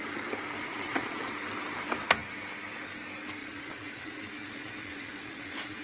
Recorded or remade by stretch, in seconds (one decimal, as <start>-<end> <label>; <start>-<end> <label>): 0.0-0.7 recorded; 0.7-1.3 remade; 1.3-3.4 recorded; 3.4-5.8 remade